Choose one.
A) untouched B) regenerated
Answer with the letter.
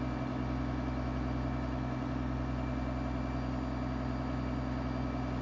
A